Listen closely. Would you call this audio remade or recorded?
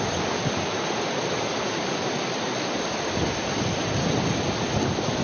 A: recorded